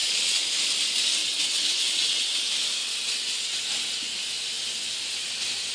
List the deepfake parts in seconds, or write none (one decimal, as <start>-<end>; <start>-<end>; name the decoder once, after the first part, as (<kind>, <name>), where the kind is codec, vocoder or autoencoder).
0.0-0.5 (vocoder, WaveNeXt); 1.2-2.4; 2.8-3.6